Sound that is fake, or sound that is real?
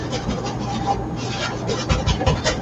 fake